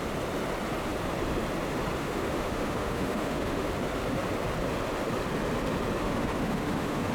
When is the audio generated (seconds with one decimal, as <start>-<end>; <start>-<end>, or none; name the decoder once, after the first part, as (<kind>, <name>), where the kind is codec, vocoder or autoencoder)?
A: 2.0-3.7 (autoencoder, DAC-VAE); 6.0-7.1